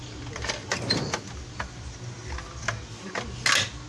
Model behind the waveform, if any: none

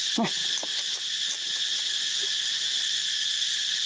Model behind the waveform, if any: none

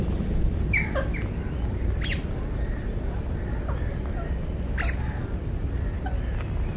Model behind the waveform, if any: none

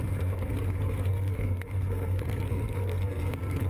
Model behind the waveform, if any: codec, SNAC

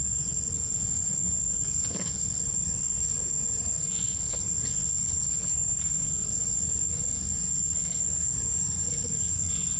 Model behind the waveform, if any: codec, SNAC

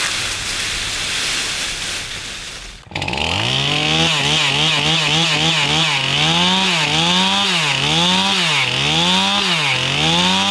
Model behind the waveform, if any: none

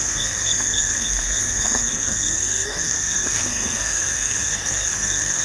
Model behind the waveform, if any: codec, SNAC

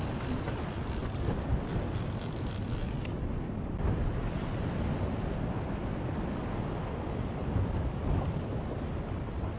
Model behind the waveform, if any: none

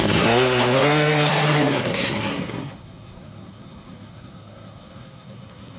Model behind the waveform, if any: codec, SNAC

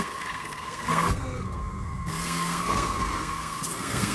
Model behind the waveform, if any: codec, SNAC